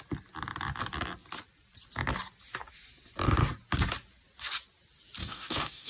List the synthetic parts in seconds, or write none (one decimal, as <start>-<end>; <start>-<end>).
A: 5.2-5.9